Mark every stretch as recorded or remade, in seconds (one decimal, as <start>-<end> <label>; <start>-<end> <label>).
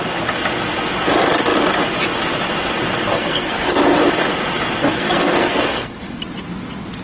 0.0-3.1 recorded; 3.1-3.8 remade; 3.8-4.8 recorded; 4.8-6.2 remade; 6.2-7.0 recorded